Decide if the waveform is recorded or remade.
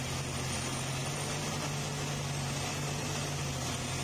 recorded